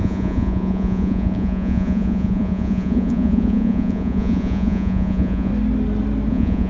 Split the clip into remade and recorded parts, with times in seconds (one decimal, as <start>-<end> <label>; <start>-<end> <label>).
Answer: 0.0-5.5 remade; 5.5-6.3 recorded; 6.3-6.7 remade